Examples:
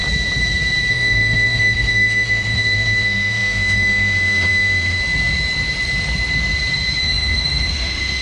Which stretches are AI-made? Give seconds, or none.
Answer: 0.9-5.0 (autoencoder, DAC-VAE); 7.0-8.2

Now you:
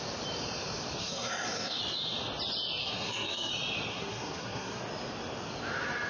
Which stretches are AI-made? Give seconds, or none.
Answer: 1.0-1.8 (codec, SNAC); 2.8-3.5; 3.9-4.8

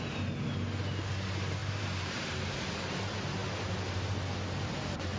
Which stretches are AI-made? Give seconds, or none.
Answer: 1.6-2.5 (vocoder, BigVGAN v2)